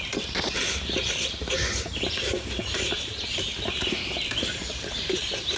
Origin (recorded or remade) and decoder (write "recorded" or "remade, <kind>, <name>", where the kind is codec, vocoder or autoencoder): recorded